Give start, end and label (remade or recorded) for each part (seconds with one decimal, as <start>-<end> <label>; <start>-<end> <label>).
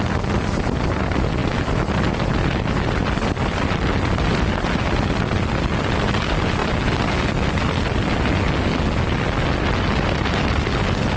0.0-11.2 recorded